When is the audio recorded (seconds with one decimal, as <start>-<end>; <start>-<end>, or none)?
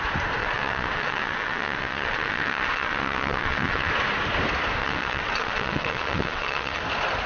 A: 0.0-0.4; 3.9-4.8; 6.8-7.3